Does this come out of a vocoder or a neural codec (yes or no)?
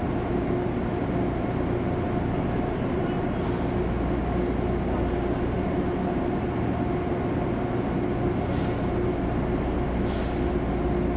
no